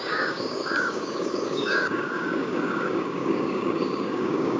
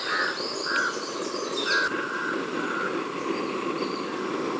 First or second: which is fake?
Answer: first